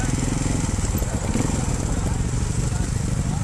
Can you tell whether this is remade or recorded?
recorded